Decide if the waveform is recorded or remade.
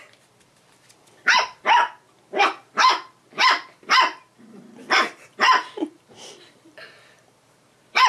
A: remade